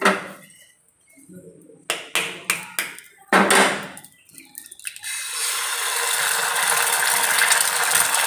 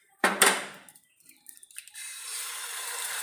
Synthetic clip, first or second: second